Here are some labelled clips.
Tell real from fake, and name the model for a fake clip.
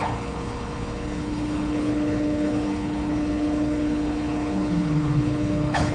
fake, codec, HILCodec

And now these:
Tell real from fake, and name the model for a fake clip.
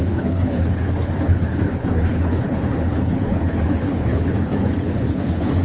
fake, codec, HILCodec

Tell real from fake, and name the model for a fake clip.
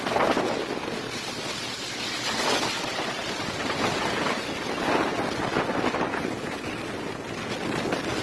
real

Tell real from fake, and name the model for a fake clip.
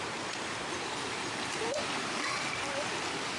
real